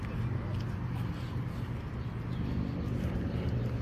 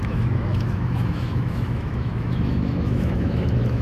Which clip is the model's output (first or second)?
second